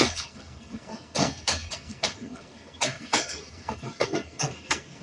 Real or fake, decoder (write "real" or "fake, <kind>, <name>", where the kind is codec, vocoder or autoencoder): fake, codec, SNAC